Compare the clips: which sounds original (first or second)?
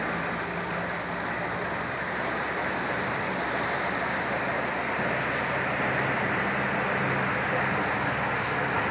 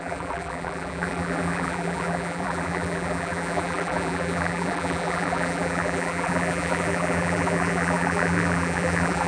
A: first